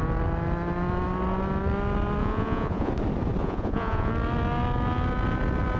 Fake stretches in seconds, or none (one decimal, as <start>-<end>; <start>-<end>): 2.2-2.9; 3.4-4.1